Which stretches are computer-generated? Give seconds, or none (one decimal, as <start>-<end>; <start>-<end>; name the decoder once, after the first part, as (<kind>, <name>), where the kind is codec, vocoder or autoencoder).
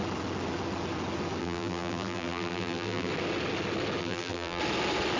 1.4-3.1 (vocoder, BigVGAN v2); 4.0-4.6